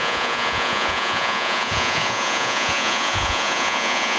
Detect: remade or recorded remade